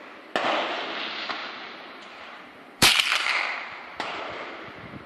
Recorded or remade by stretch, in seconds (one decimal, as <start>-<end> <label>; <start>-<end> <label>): 0.0-1.4 recorded; 1.4-4.5 remade; 4.5-5.1 recorded